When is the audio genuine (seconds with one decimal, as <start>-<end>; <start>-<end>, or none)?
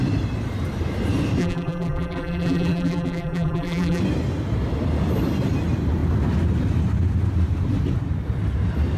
0.0-1.4; 4.0-9.0